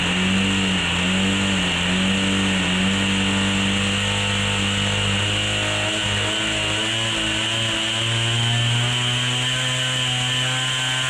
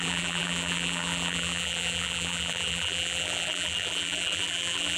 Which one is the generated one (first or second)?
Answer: second